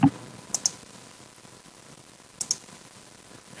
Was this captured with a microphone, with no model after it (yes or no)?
yes